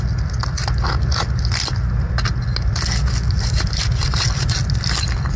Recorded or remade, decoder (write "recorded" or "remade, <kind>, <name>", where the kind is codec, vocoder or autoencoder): recorded